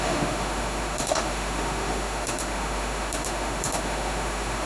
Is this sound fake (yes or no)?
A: yes